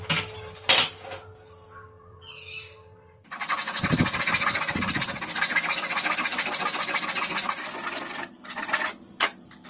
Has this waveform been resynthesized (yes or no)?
no